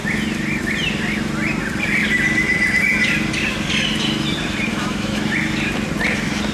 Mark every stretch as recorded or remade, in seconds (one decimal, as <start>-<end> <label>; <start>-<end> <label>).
0.0-4.7 recorded; 4.7-5.3 remade; 5.3-6.5 recorded